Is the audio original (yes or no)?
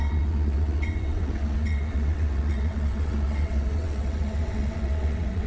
no